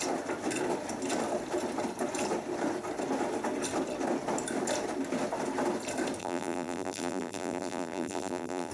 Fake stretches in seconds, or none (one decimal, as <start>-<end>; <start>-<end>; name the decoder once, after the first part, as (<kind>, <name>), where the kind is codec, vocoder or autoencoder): 6.2-8.7 (vocoder, BigVGAN v2)